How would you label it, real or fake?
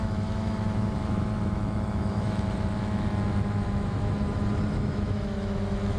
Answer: fake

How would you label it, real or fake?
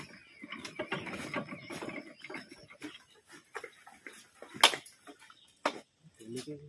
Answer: real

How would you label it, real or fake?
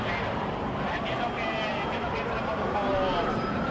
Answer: real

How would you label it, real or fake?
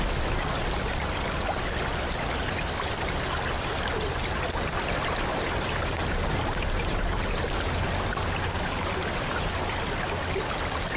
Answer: real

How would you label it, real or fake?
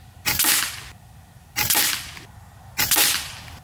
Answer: real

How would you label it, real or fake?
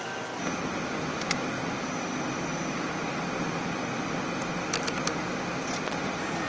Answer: real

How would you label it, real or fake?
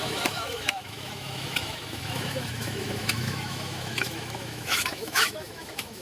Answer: fake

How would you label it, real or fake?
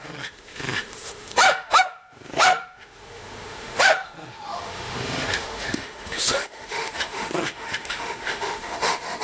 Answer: fake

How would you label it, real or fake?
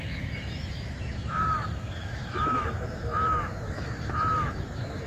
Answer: fake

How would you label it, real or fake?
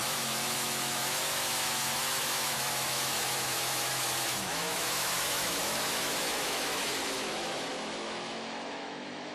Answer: fake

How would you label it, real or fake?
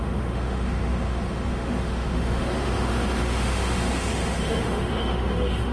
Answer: fake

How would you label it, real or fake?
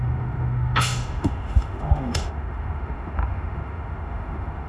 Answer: fake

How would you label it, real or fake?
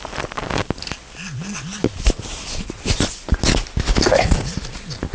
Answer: real